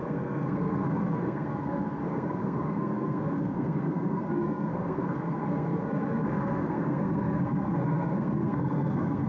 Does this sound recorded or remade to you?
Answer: remade